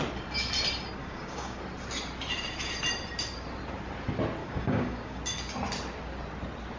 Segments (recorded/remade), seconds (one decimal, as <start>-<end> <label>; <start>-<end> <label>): 0.0-1.0 recorded; 1.0-1.6 remade; 1.6-4.4 recorded; 4.4-5.2 remade; 5.2-6.8 recorded